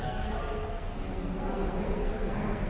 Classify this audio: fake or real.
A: fake